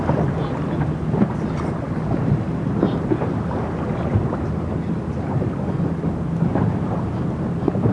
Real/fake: real